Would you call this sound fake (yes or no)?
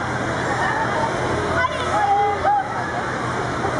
no